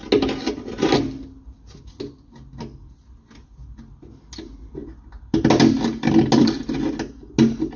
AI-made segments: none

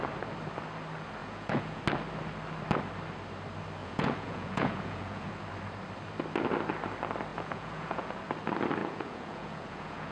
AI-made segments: 1.2-1.8 (vocoder, Vocos); 3.8-5.3; 7.3-8.2; 8.8-10.1

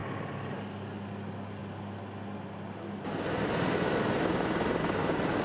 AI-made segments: none

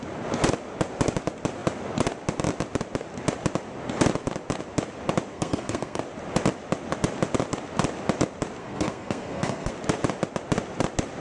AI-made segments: 5.3-6.0 (codec, SNAC); 8.6-9.7